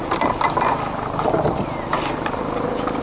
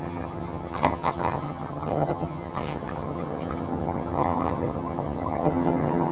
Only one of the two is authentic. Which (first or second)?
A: first